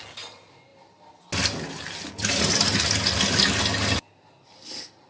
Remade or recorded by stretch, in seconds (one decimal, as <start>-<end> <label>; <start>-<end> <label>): 0.0-5.1 recorded